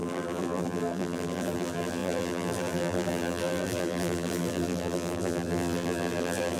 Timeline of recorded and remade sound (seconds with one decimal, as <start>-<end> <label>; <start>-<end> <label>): 0.0-6.6 remade